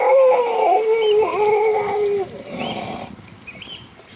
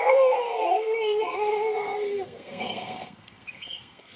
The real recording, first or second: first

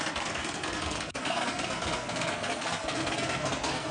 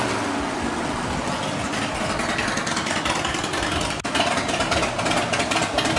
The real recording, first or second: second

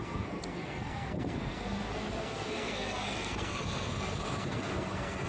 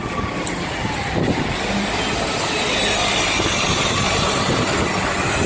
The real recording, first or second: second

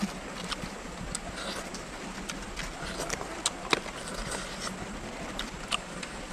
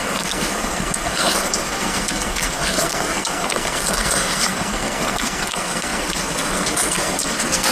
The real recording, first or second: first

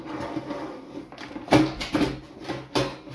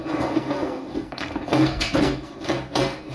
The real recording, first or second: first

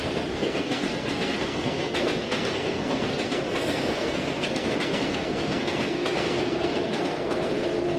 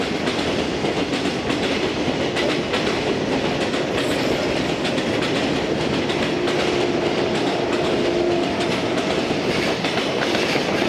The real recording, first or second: second